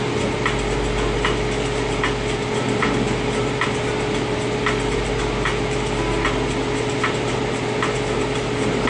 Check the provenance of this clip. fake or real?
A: real